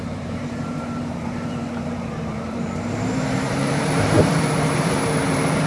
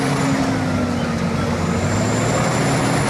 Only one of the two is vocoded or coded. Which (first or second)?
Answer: first